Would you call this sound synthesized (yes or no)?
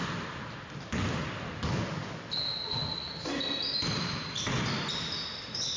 no